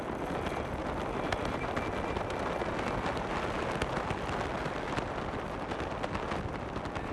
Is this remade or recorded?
recorded